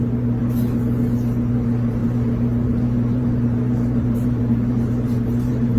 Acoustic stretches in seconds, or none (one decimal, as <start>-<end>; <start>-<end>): 0.4-1.5